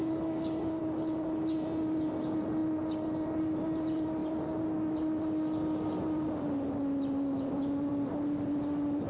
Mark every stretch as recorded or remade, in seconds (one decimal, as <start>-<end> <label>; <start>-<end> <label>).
0.0-0.8 remade; 0.8-9.1 recorded